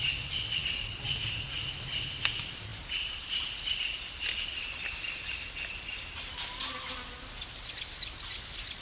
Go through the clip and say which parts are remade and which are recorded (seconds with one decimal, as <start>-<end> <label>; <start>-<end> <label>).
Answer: 0.0-2.7 recorded; 2.7-3.6 remade; 3.6-8.8 recorded

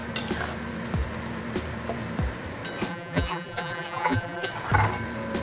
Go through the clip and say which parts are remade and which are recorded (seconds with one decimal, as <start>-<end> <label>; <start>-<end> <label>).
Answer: 0.0-2.9 recorded; 2.9-4.5 remade; 4.5-5.4 recorded

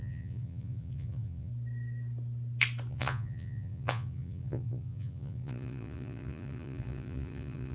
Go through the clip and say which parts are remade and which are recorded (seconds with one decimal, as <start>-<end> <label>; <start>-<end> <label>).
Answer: 0.0-1.5 remade; 1.5-2.9 recorded; 2.9-7.7 remade

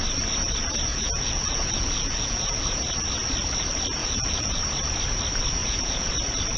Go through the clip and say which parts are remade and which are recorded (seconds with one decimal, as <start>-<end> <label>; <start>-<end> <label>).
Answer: 0.0-0.9 recorded; 0.9-2.8 remade; 2.8-4.0 recorded; 4.0-4.6 remade; 4.6-5.6 recorded; 5.6-6.1 remade; 6.1-6.6 recorded

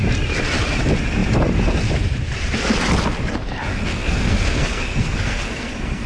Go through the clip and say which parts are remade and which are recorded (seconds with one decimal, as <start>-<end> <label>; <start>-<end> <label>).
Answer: 0.0-3.7 recorded; 3.7-6.1 remade